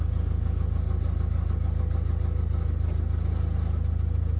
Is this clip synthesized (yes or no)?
no